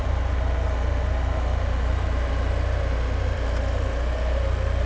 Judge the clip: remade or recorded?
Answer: recorded